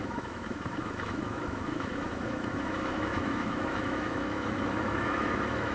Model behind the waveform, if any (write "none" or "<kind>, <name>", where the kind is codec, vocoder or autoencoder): autoencoder, DAC-VAE